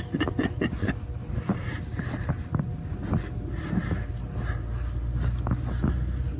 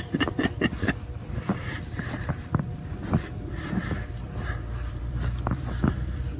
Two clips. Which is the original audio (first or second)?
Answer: first